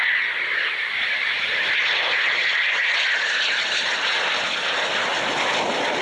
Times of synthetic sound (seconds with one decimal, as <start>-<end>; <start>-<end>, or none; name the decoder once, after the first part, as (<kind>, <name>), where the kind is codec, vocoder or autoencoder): 0.0-5.1 (vocoder, BigVGAN v2)

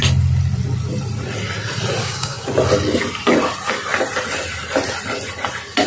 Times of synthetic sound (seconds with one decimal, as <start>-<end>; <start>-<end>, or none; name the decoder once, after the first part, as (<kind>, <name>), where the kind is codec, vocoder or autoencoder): 2.0-2.5 (codec, DAC)

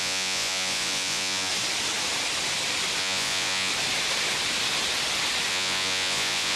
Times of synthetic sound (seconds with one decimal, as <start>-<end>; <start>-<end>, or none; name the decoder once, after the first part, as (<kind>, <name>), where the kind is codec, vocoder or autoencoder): 0.0-1.5 (vocoder, Vocos); 3.0-3.7; 5.5-6.6

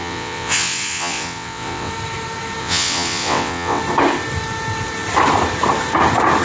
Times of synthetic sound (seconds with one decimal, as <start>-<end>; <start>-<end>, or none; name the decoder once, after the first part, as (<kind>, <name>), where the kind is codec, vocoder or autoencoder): 0.0-1.9 (vocoder, WaveNeXt); 2.6-3.8

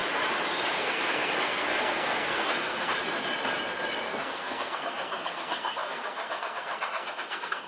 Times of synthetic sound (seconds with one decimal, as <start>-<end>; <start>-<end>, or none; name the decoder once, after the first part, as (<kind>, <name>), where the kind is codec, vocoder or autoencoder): 0.7-2.9 (codec, SNAC); 4.1-7.7

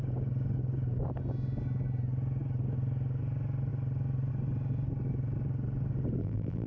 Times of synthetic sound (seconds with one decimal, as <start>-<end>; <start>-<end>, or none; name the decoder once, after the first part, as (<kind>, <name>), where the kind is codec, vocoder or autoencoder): 6.2-6.7 (vocoder, BigVGAN v2)

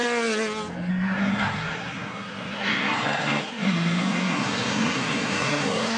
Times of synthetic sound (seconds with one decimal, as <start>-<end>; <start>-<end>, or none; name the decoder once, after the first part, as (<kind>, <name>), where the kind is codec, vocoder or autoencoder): 0.9-6.0 (codec, SNAC)

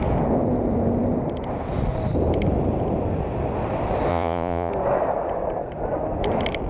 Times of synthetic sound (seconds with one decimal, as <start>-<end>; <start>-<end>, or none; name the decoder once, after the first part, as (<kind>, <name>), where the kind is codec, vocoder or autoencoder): 4.1-4.7 (vocoder, Vocos)